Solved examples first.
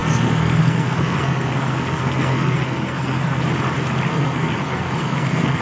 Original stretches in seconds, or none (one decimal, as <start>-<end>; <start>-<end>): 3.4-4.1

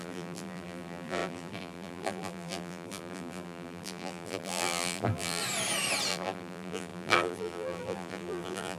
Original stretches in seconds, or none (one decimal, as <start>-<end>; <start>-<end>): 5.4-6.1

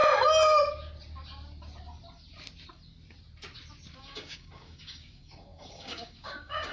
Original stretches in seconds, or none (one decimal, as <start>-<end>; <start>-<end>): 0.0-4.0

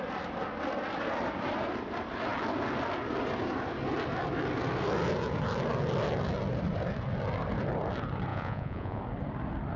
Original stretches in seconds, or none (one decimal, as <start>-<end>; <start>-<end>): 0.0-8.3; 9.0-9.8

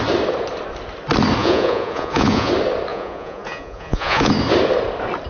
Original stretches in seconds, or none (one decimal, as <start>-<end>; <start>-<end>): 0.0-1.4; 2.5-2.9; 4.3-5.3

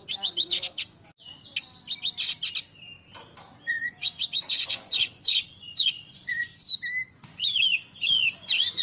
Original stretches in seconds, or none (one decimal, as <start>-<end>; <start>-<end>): 1.5-3.7; 6.5-7.1

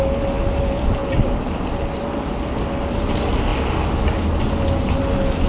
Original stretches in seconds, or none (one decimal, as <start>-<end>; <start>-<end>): 0.0-5.5

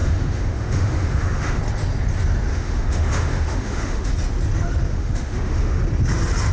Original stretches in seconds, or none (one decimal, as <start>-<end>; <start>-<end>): 1.6-2.5; 4.1-4.9; 5.8-6.5